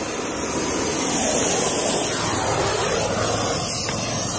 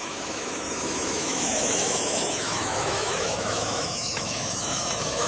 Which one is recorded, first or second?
first